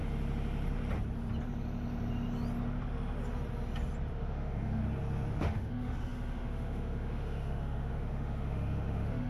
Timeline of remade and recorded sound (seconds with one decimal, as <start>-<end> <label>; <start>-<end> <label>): 0.0-4.1 recorded; 4.1-4.8 remade; 4.8-5.4 recorded; 5.4-9.3 remade